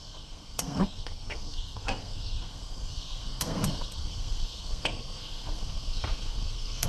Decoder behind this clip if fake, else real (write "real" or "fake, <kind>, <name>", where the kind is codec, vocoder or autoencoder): fake, codec, SNAC